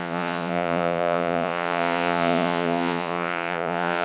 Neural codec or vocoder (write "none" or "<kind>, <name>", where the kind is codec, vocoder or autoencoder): vocoder, Vocos